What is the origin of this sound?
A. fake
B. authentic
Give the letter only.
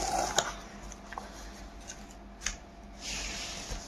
B